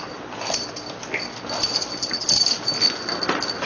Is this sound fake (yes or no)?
no